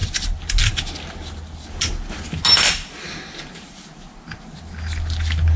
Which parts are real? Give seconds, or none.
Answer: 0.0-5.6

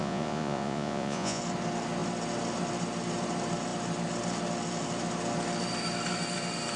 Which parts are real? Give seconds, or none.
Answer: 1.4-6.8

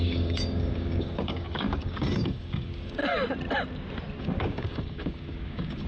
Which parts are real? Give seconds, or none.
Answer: 3.0-4.2